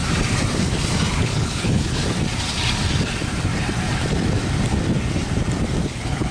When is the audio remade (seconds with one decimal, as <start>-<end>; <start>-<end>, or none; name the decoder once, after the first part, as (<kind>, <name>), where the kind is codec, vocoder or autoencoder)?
1.1-2.0 (codec, HILCodec); 5.8-6.3